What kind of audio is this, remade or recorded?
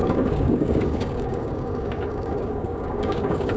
remade